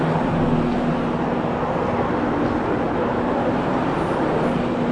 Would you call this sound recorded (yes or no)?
yes